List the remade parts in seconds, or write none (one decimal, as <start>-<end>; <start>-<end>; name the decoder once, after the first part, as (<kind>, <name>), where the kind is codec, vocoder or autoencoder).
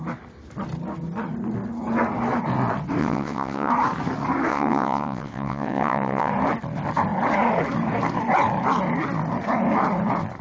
3.0-3.7 (vocoder, WaveNeXt); 4.5-6.3